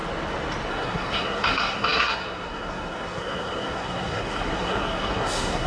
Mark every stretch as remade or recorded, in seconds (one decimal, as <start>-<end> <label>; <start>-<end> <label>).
0.0-0.7 recorded; 0.7-5.7 remade